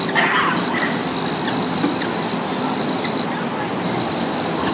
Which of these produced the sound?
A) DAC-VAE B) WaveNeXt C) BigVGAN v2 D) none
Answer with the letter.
C